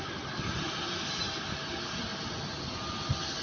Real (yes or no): yes